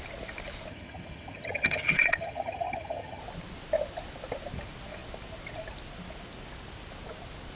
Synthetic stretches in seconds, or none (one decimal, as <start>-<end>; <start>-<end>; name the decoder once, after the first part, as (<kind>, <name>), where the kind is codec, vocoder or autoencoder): 0.7-3.2 (vocoder, HiFi-GAN)